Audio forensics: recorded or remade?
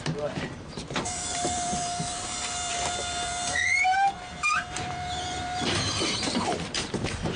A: remade